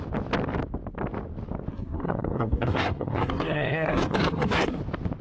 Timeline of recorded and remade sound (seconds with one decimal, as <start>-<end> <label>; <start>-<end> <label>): 0.0-1.7 recorded; 1.7-4.8 remade; 4.8-5.2 recorded